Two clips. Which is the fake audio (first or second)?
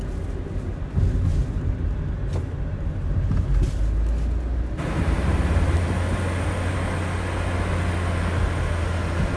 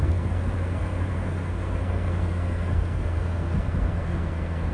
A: second